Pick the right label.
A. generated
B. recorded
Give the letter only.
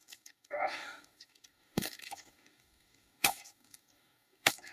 A